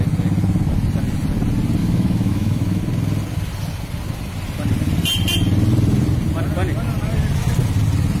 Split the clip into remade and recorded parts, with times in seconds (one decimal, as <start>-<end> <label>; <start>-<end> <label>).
0.0-1.8 recorded; 1.8-2.8 remade; 2.8-8.2 recorded